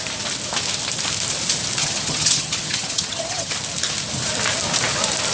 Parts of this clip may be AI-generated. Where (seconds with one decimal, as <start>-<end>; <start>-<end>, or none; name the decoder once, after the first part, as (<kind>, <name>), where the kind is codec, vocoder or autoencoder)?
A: 1.8-3.5 (vocoder, HiFi-GAN)